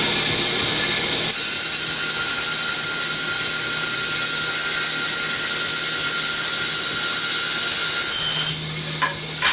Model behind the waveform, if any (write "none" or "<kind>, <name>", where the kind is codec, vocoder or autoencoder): none